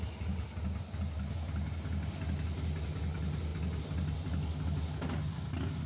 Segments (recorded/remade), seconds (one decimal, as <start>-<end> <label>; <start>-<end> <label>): 0.0-5.9 recorded